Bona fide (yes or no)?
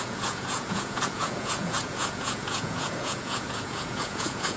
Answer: no